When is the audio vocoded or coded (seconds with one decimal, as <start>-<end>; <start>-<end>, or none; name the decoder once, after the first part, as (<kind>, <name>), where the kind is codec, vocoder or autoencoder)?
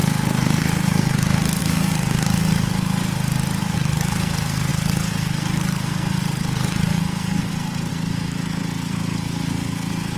0.0-3.0 (codec, SNAC); 3.6-10.2